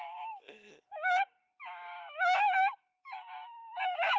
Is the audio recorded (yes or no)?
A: no